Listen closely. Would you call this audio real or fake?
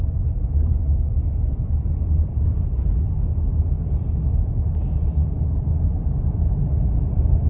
real